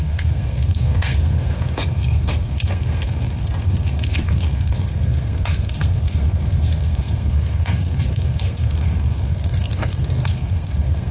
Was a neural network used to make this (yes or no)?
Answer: yes